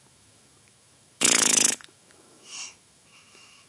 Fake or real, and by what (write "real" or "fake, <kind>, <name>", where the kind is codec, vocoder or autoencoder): fake, autoencoder, DAC-VAE